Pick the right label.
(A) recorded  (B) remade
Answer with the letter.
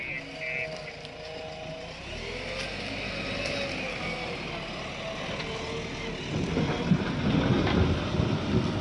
A